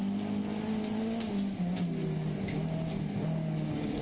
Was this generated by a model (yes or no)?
no